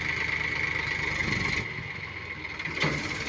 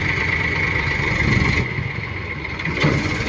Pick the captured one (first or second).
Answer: first